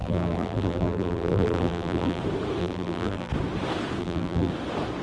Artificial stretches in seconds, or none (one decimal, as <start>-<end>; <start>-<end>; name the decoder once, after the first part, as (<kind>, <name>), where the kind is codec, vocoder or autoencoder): 0.0-2.2 (vocoder, BigVGAN v2); 2.6-3.3; 4.0-4.5